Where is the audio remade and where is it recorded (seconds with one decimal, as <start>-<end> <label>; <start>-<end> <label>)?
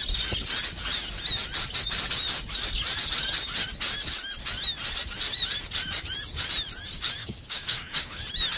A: 0.0-7.2 recorded; 7.2-8.2 remade; 8.2-8.6 recorded